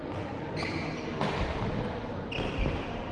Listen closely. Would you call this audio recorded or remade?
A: recorded